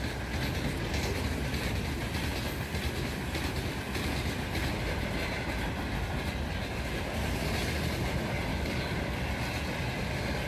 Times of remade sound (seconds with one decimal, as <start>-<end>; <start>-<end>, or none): 8.5-9.2